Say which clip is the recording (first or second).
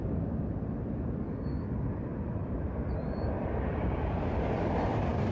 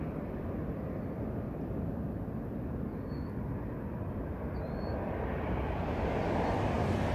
second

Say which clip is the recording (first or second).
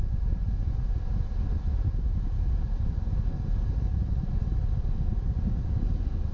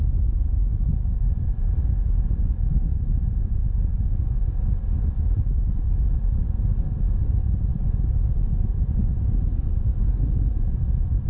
second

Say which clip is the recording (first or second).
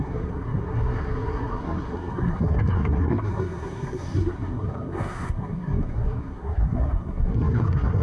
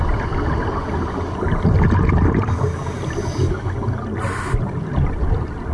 second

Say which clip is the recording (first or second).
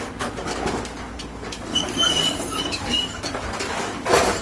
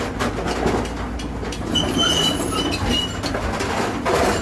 second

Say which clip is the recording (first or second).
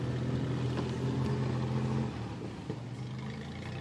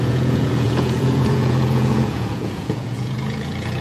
first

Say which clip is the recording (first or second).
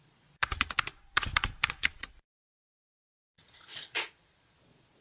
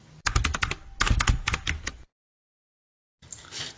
second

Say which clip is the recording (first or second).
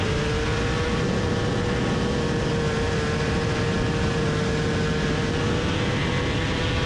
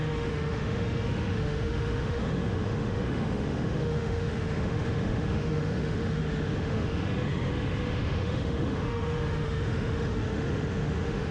first